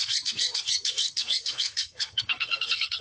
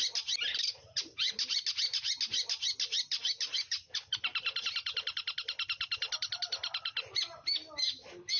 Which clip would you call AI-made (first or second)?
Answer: first